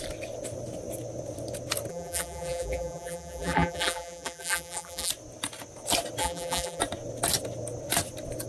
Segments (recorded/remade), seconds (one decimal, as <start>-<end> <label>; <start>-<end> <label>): 0.0-1.9 recorded; 1.9-5.1 remade; 5.1-6.2 recorded; 6.2-6.8 remade; 6.8-8.5 recorded